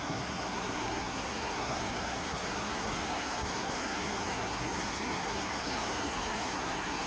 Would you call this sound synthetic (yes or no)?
yes